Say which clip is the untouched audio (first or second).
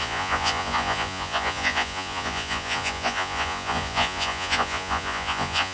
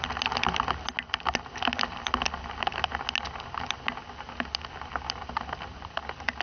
second